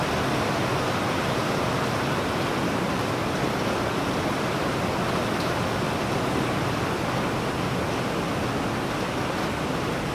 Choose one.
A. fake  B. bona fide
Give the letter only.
B